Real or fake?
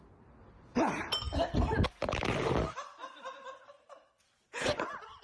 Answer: real